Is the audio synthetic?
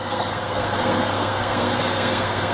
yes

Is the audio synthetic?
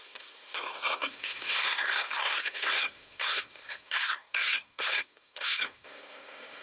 yes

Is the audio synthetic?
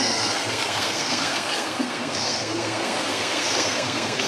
yes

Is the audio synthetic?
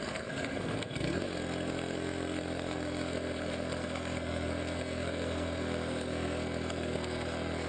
yes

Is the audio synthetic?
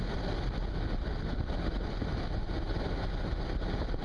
no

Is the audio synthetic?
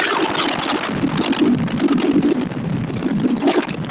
no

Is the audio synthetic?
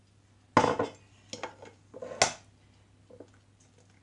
no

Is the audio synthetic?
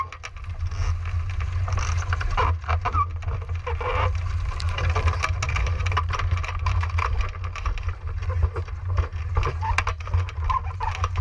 no